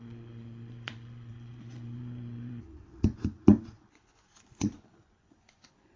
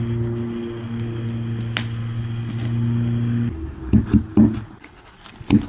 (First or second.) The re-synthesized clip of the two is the first